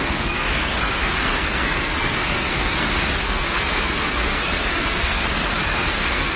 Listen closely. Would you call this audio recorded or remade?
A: remade